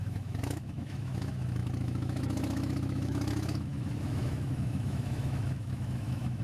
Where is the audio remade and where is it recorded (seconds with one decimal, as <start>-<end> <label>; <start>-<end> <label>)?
0.0-6.4 remade